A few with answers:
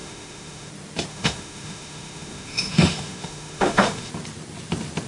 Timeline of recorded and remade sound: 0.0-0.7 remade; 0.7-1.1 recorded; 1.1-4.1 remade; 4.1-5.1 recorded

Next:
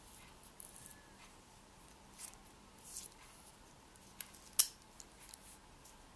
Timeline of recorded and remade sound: 0.0-6.2 recorded

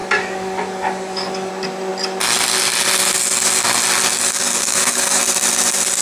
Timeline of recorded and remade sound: 0.0-1.5 remade; 1.5-4.1 recorded; 4.1-5.2 remade; 5.2-6.0 recorded

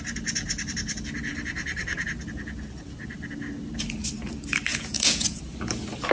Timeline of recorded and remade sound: 0.0-4.7 recorded; 4.7-5.4 remade; 5.4-6.1 recorded

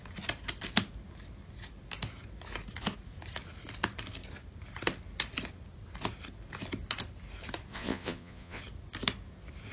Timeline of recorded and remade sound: 0.0-7.7 recorded; 7.7-8.6 remade; 8.6-9.7 recorded

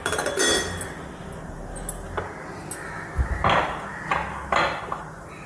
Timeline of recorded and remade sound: 0.0-5.5 recorded

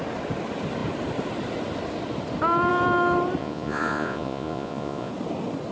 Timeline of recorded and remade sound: 0.0-3.4 recorded; 3.4-5.1 remade; 5.1-5.7 recorded

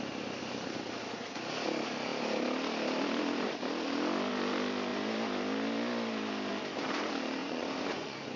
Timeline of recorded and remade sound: 0.0-7.4 recorded; 7.4-8.4 remade